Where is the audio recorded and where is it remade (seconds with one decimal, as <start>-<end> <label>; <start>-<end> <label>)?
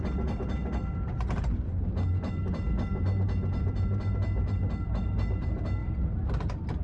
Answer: 0.0-5.8 recorded; 5.8-6.8 remade